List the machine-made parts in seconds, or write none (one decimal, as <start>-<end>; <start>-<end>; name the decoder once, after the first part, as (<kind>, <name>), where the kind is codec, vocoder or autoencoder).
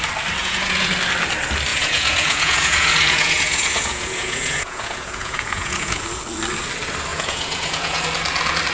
0.4-0.9 (vocoder, Vocos); 1.7-6.0; 7.1-8.0